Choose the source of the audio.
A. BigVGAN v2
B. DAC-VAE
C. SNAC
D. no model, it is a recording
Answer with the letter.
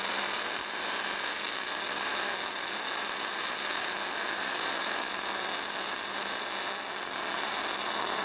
D